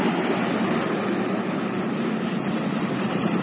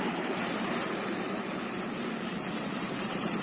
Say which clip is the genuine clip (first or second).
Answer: first